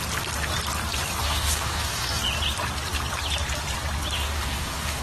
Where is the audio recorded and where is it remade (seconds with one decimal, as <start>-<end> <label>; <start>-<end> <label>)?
0.0-1.2 recorded; 1.2-2.2 remade; 2.2-4.2 recorded; 4.2-5.0 remade